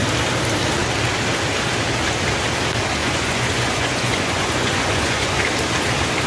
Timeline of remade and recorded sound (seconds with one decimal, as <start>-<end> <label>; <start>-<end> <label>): 0.0-3.0 recorded; 3.0-5.4 remade; 5.4-6.3 recorded